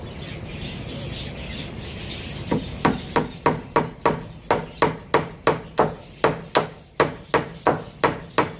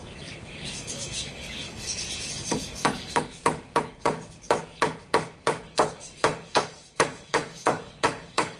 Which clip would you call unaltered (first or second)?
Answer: first